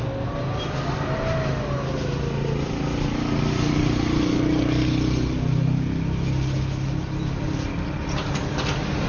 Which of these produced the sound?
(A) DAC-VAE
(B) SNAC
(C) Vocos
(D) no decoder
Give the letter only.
D